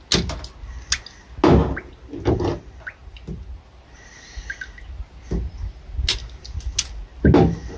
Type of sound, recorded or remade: recorded